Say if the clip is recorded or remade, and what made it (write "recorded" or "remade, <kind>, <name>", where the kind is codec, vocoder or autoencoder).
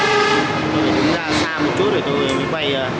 recorded